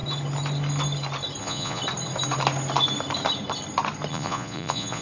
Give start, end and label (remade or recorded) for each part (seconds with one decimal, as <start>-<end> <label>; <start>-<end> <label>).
0.0-1.4 recorded; 1.4-1.8 remade; 1.8-4.1 recorded; 4.1-5.0 remade